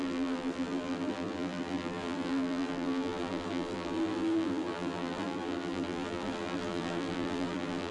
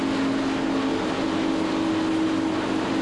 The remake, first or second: first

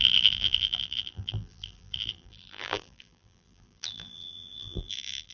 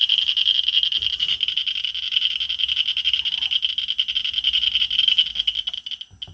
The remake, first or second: first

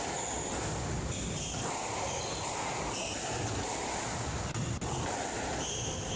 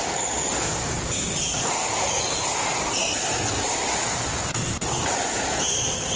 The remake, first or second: second